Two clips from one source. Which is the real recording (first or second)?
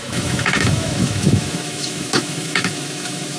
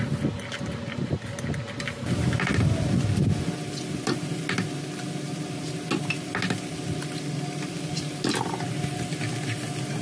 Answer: second